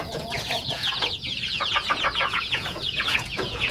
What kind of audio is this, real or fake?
fake